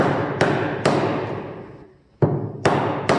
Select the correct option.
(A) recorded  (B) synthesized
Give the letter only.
A